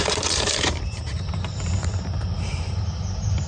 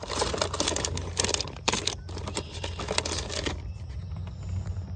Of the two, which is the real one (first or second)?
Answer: second